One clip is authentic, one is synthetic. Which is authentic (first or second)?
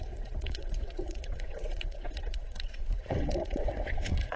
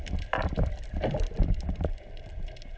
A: second